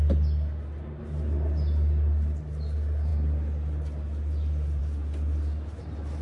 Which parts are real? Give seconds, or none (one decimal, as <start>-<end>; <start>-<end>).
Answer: 0.0-6.2